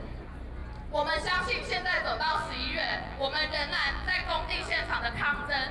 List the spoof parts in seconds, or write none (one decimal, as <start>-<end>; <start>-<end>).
2.3-4.9